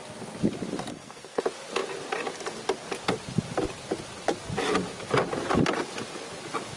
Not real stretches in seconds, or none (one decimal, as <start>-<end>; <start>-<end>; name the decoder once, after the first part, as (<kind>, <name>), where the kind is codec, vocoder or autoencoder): 0.9-1.4 (codec, SNAC)